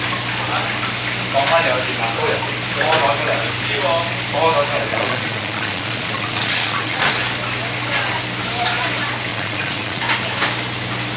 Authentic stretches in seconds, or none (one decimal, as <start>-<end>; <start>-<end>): 0.0-4.9; 7.1-9.3; 10.0-11.2